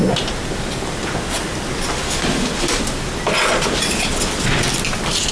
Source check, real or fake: real